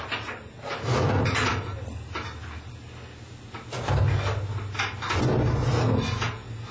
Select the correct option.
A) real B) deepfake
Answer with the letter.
A